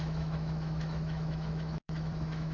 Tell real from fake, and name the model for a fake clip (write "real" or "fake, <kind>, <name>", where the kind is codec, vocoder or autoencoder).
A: fake, autoencoder, DAC-VAE